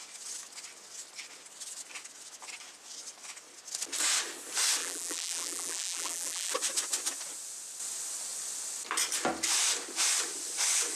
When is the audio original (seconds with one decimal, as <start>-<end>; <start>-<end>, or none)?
0.0-4.8; 6.5-11.0